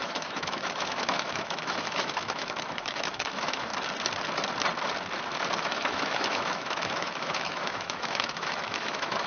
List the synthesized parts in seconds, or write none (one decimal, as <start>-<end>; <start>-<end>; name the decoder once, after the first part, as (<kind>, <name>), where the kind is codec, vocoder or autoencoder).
0.0-3.7 (autoencoder, DAC-VAE); 5.6-9.3

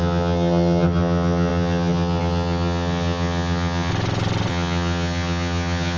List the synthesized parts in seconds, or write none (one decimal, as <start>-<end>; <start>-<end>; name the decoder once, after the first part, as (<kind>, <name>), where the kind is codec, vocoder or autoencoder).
0.0-3.9 (vocoder, HiFi-GAN); 4.5-6.0

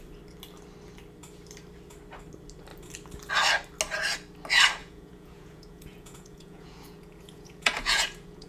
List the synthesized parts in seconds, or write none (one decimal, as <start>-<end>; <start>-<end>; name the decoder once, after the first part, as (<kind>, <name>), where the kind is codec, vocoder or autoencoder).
4.8-8.5 (vocoder, Vocos)

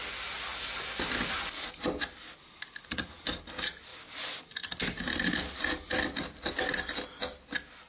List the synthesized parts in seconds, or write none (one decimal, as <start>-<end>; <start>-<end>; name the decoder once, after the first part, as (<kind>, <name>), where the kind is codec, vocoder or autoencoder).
none

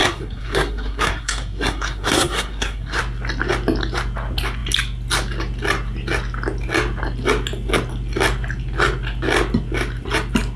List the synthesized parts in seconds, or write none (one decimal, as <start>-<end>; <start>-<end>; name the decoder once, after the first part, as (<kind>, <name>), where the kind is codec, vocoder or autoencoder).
0.0-3.0 (codec, SNAC)

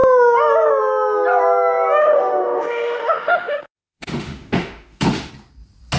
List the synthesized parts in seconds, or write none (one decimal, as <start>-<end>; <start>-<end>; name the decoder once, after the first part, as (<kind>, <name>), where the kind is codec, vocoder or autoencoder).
2.0-5.3 (autoencoder, DAC-VAE)

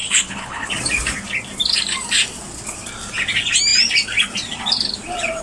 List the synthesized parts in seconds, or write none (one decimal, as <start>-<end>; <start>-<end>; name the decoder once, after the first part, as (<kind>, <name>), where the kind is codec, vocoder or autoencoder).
0.0-0.7 (codec, HILCodec)